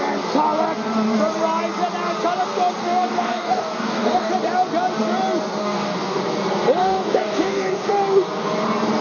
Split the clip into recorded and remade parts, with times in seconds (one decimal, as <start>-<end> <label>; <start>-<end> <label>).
0.0-2.8 recorded; 2.8-4.3 remade; 4.3-5.6 recorded; 5.6-6.2 remade; 6.2-6.8 recorded; 6.8-7.9 remade; 7.9-9.0 recorded